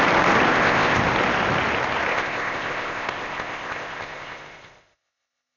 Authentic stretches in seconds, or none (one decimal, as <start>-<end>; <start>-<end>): 0.0-0.5; 1.0-2.1